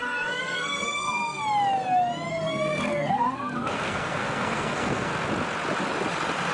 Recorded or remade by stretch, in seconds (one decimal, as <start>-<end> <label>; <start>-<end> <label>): 0.0-1.4 remade; 1.4-2.3 recorded; 2.3-5.1 remade; 5.1-6.5 recorded